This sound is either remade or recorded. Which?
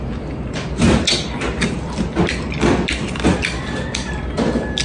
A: recorded